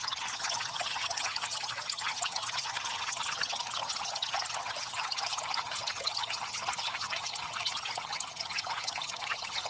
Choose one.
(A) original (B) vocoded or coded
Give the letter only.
B